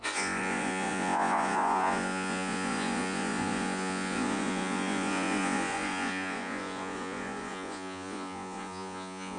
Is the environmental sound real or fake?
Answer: fake